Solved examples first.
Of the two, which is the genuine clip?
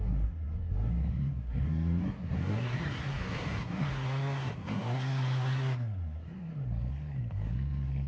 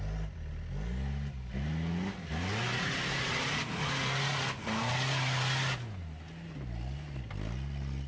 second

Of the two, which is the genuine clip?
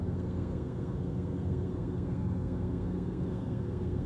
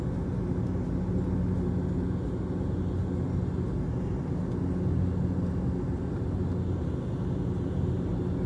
second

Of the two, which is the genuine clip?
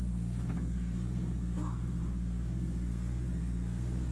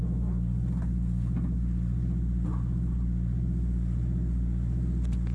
second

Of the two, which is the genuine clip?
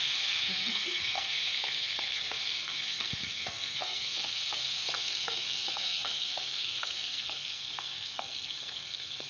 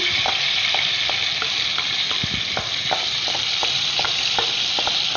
second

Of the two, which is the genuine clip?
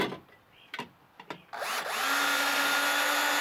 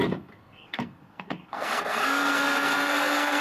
first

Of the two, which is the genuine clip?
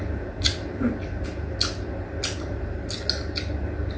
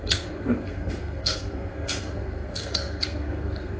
first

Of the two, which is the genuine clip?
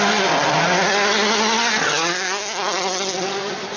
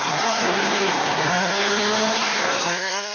first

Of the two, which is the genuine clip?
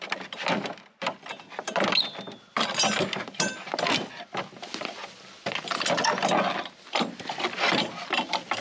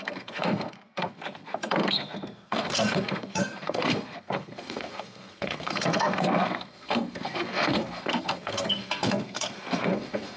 first